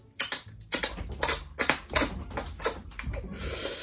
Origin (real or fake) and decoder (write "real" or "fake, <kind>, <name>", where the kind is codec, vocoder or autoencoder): real